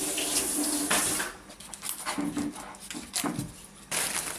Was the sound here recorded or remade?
recorded